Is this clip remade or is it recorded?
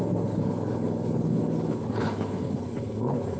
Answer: remade